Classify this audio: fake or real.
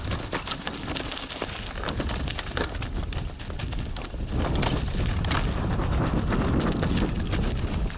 real